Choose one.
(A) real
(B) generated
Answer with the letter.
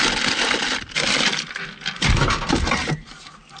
A